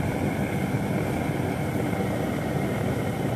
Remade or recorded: recorded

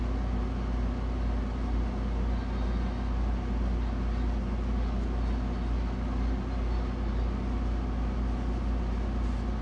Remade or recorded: recorded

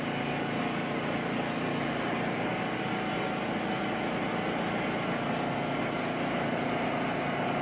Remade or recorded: recorded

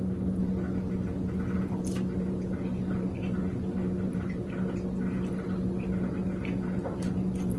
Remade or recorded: recorded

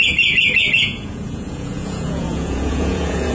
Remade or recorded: remade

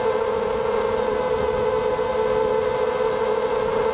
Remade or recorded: recorded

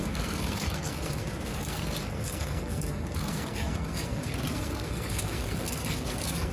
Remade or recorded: remade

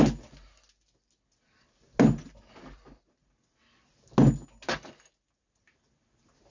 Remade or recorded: recorded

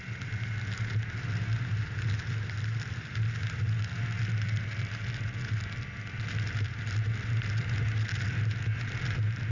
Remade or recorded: recorded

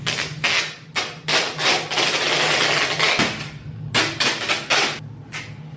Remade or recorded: recorded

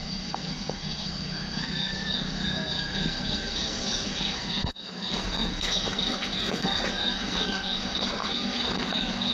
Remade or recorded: remade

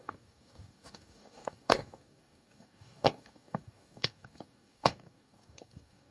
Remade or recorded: remade